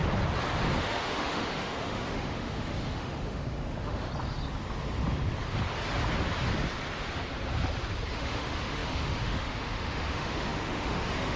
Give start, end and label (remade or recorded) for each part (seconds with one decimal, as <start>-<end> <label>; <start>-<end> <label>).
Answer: 0.0-0.8 recorded; 0.8-4.1 remade; 4.1-8.1 recorded; 8.1-11.4 remade